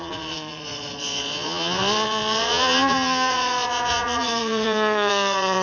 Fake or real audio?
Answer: fake